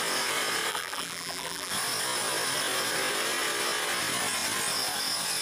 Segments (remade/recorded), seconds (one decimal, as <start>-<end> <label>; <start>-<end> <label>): 0.0-0.7 recorded; 0.7-1.7 remade; 1.7-5.4 recorded